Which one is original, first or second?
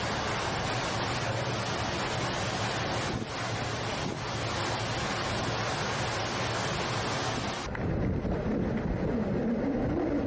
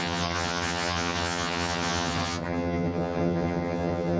first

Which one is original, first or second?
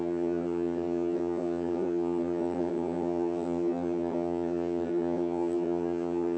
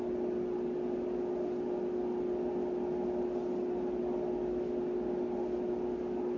second